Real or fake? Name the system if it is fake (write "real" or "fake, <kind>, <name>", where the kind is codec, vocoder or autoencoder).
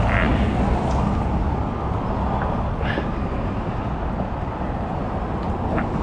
real